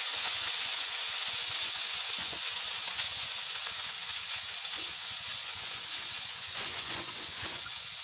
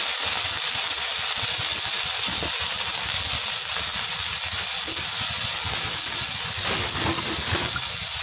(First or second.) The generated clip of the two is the first